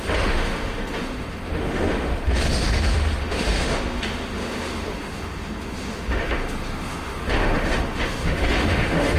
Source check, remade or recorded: remade